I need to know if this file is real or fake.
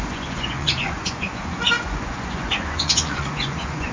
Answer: fake